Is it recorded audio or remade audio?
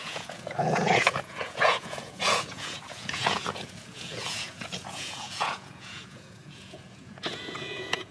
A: remade